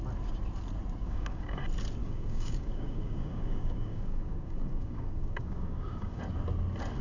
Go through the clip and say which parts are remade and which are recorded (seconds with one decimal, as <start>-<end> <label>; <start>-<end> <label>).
0.0-1.0 recorded; 1.0-1.6 remade; 1.6-2.0 recorded; 2.0-6.2 remade; 6.2-7.0 recorded